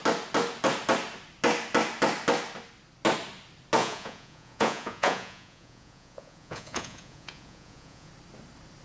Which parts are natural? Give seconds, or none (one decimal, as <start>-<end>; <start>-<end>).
0.0-3.8; 8.1-8.8